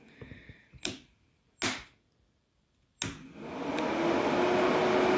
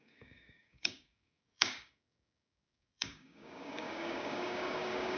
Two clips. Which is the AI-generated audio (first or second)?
second